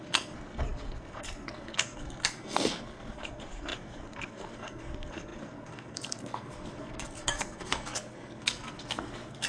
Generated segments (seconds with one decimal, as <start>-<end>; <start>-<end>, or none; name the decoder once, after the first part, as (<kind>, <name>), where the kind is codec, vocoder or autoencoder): 0.0-9.5 (codec, SNAC)